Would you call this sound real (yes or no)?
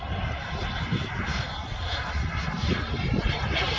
yes